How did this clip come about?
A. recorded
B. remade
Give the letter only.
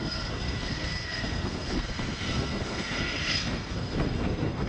B